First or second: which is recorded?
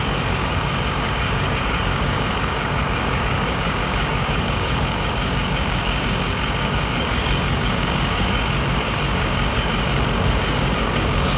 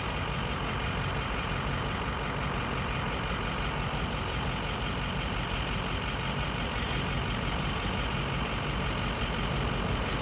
second